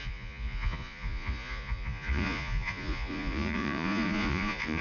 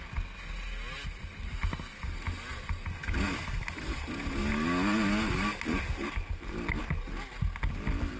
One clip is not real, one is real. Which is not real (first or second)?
first